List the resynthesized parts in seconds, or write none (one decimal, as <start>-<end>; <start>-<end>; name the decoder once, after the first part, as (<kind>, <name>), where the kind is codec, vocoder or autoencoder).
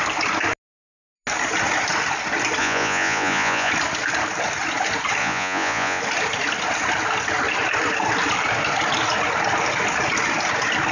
2.6-3.7 (vocoder, Vocos); 5.2-6.0